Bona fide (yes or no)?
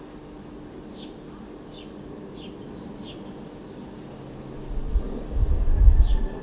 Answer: yes